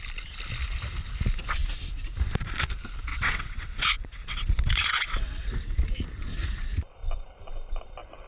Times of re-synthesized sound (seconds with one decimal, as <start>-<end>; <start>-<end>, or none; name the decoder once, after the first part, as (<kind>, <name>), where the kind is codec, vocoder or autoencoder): 3.1-5.8 (vocoder, WaveNeXt)